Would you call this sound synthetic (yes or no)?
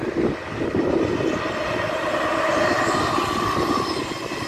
no